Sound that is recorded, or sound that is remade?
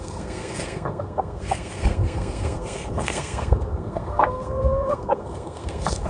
remade